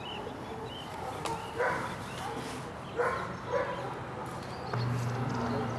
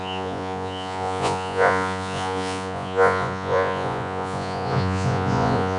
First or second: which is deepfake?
second